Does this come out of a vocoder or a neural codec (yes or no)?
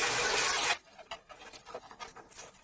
no